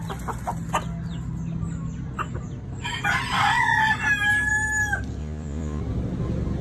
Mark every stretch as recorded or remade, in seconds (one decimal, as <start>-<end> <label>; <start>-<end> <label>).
0.0-5.2 recorded; 5.2-5.8 remade; 5.8-6.6 recorded